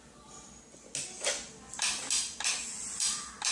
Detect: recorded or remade recorded